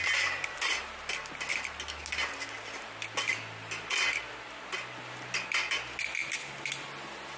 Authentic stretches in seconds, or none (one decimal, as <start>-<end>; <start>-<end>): 0.0-7.4